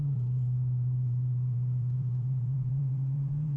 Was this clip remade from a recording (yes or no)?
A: yes